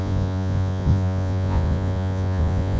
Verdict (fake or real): fake